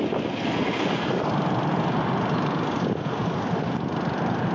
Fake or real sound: real